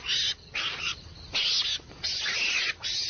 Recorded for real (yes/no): yes